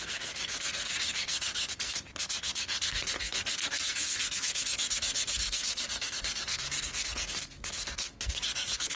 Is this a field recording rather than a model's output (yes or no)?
no